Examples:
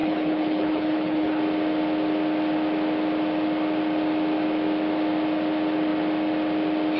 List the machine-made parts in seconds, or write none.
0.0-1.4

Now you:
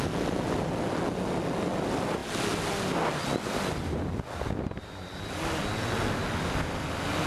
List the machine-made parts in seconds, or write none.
none

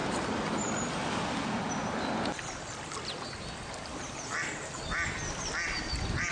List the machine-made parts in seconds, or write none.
none

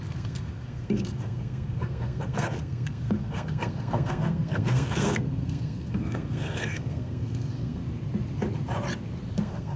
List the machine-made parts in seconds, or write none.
0.0-7.8; 9.3-9.8

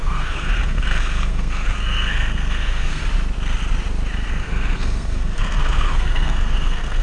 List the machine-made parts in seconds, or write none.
0.0-3.0; 4.3-7.0

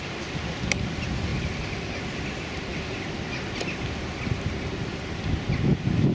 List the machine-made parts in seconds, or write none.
none

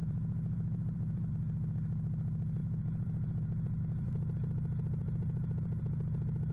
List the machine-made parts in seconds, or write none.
0.0-1.3; 2.6-3.8; 5.0-5.8